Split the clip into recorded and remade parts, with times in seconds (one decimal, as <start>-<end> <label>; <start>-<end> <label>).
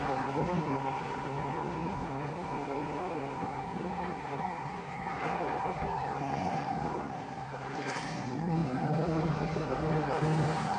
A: 0.0-10.8 remade